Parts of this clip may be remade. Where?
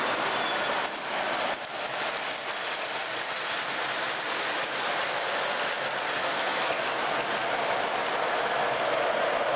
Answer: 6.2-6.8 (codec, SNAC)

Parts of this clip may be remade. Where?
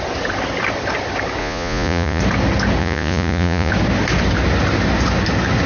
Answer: 1.4-2.2 (vocoder, Vocos); 2.8-3.7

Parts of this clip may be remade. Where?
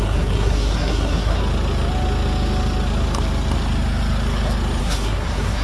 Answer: 0.0-1.4 (codec, SNAC); 4.8-5.6